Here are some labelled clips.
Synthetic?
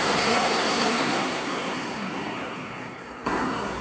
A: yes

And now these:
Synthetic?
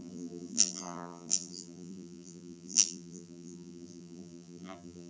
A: yes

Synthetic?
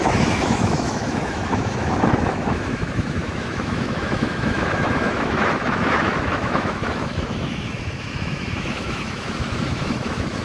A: yes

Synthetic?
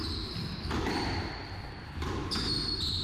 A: no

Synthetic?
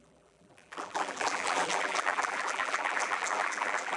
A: yes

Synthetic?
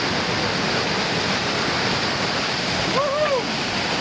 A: no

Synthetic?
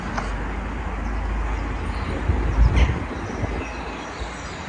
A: no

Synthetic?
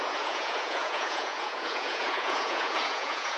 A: yes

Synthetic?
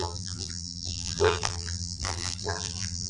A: yes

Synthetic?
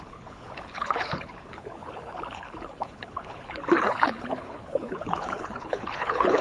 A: yes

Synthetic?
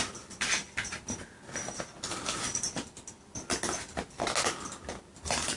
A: no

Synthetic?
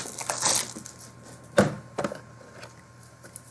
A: no